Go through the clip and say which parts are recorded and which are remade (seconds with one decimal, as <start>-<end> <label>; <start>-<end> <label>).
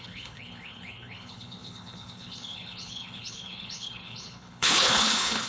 0.0-5.5 remade